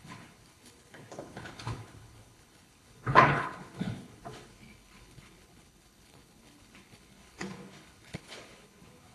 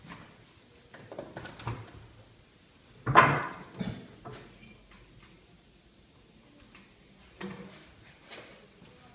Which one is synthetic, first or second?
first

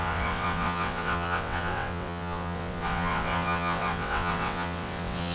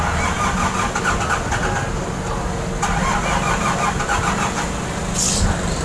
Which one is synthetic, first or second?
first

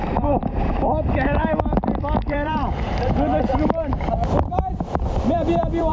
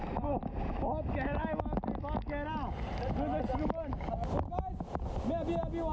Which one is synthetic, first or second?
first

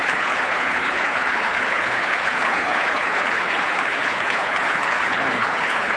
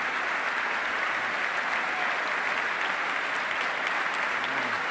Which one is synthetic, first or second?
first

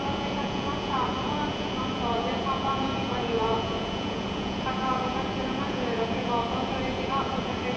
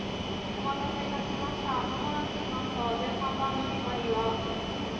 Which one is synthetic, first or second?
first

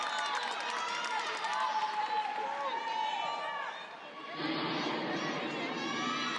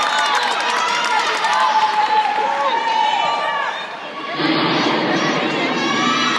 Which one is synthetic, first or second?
second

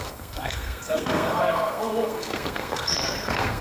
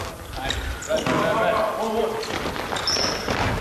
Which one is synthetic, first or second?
first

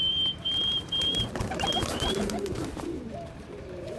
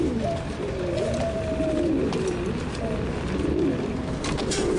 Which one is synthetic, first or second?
first